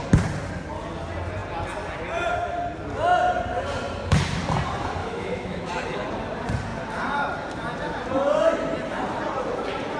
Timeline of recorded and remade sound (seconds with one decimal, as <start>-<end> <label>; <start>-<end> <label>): 0.0-5.0 recorded; 5.0-5.7 remade; 5.7-10.0 recorded